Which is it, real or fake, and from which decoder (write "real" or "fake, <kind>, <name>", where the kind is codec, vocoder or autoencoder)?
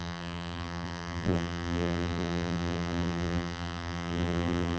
fake, vocoder, BigVGAN v2